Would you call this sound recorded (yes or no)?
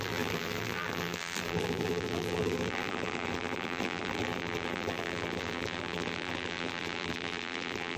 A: no